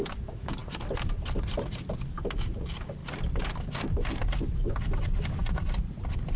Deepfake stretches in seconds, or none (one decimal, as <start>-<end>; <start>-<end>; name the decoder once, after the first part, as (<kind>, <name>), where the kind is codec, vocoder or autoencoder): 0.0-5.4 (vocoder, BigVGAN v2); 6.0-6.4